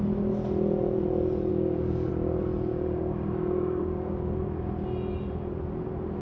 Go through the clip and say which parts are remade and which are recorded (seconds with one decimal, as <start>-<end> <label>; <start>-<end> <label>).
0.0-1.5 recorded; 1.5-2.1 remade; 2.1-2.7 recorded; 2.7-4.7 remade; 4.7-6.2 recorded